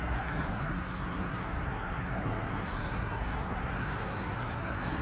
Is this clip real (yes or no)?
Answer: no